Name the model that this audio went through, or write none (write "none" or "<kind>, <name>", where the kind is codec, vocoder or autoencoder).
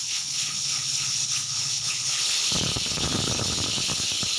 codec, HILCodec